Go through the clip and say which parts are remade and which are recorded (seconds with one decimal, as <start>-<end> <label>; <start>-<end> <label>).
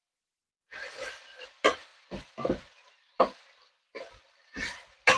0.0-5.2 recorded